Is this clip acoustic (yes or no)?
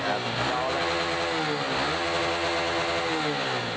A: yes